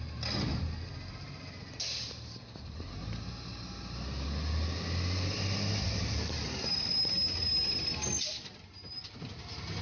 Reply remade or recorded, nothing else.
recorded